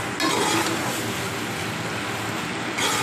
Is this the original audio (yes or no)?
yes